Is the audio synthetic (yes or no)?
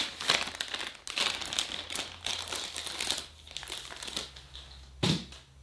no